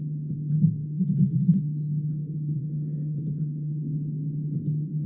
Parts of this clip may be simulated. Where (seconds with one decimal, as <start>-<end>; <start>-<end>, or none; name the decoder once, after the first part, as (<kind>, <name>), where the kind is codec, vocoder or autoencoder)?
0.8-3.9 (autoencoder, DAC-VAE)